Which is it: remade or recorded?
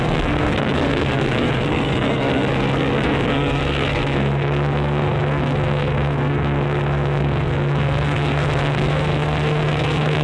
remade